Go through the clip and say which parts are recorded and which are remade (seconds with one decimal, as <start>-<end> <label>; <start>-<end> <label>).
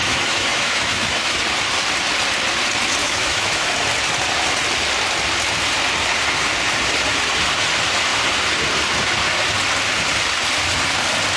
0.0-1.4 remade; 1.4-3.0 recorded; 3.0-3.8 remade; 3.8-11.4 recorded